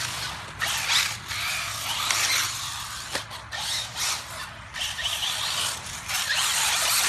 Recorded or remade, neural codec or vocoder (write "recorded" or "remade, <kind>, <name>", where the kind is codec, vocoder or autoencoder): recorded